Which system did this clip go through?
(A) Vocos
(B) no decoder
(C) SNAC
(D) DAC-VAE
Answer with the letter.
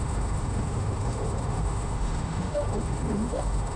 D